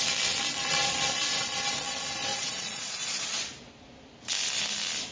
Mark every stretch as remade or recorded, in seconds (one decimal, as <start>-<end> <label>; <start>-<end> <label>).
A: 0.0-2.3 recorded; 2.3-3.4 remade; 3.4-5.1 recorded